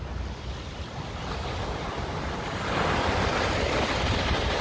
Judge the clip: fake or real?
real